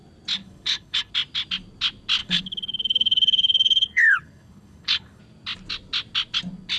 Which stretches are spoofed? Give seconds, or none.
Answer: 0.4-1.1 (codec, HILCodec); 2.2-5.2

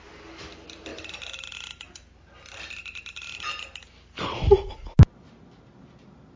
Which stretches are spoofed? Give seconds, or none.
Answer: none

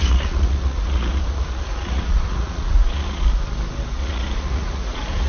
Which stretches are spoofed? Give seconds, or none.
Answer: 0.0-3.2 (vocoder, Vocos); 4.0-5.3